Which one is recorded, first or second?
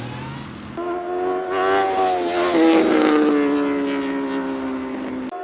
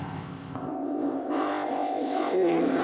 first